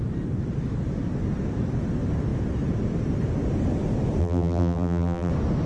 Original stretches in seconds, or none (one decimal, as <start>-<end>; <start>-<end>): 0.0-4.2; 5.3-5.7